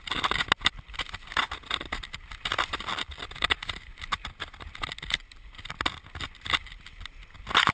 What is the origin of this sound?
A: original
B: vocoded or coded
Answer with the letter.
A